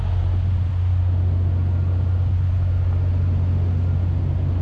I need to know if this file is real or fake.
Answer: real